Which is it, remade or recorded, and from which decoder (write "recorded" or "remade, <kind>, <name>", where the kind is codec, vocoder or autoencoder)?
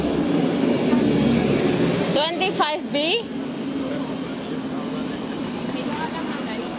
recorded